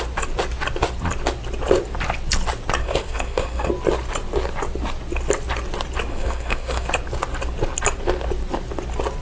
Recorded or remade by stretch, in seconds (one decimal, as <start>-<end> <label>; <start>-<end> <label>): 0.0-2.8 recorded; 2.8-3.7 remade; 3.7-6.1 recorded; 6.1-6.9 remade; 6.9-9.2 recorded